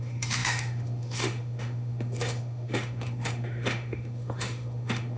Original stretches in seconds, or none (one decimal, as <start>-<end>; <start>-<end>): none

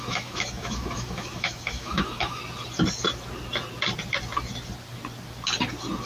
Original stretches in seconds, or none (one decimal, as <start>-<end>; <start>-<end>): 2.4-6.1

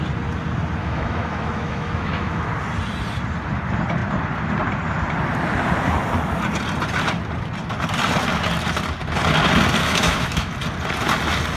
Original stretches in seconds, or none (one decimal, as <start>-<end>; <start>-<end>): 0.0-0.8; 2.5-9.8; 10.5-11.6

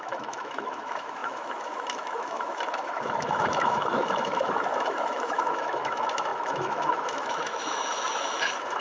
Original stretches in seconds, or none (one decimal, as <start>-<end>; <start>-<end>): none

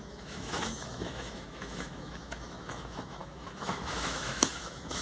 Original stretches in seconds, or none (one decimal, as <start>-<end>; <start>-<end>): none

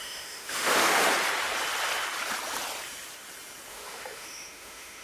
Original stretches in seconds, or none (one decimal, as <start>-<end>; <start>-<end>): 1.0-3.7

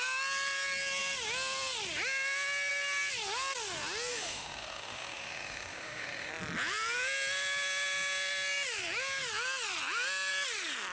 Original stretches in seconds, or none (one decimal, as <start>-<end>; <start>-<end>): 0.0-4.1; 6.3-10.9

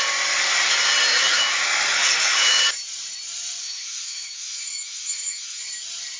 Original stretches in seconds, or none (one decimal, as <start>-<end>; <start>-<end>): 0.0-1.1; 2.6-3.6; 5.6-6.2